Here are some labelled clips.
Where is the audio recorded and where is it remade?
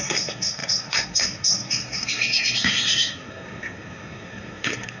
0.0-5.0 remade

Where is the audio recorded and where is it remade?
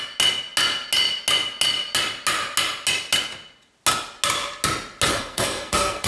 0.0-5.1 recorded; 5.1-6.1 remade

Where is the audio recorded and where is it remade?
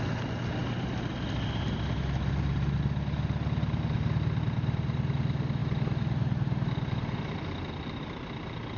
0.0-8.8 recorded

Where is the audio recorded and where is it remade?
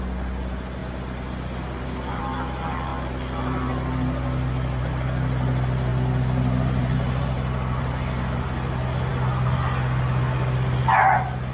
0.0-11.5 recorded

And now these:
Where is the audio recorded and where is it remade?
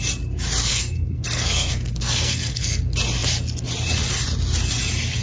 0.0-0.6 recorded; 0.6-2.8 remade; 2.8-5.2 recorded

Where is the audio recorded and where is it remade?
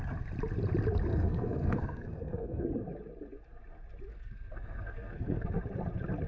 0.0-1.1 recorded; 1.1-2.6 remade; 2.6-4.1 recorded; 4.1-5.6 remade; 5.6-6.3 recorded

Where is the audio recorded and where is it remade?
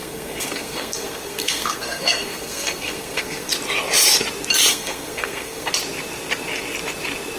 0.0-3.5 remade; 3.5-4.7 recorded; 4.7-5.7 remade; 5.7-7.4 recorded